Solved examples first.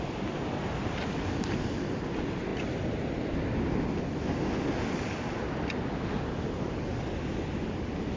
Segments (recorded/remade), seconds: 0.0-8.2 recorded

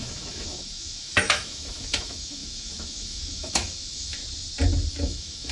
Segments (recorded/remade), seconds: 0.0-4.2 remade; 4.2-4.9 recorded; 4.9-5.5 remade

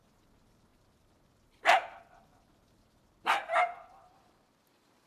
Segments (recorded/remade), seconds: 0.0-5.1 recorded

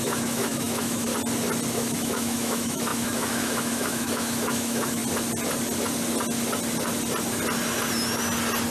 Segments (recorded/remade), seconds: 0.0-1.1 remade; 1.1-1.7 recorded; 1.7-5.0 remade; 5.0-8.7 recorded

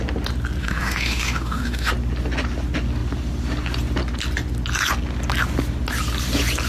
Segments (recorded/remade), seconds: 0.0-0.6 recorded; 0.6-1.9 remade; 1.9-6.7 recorded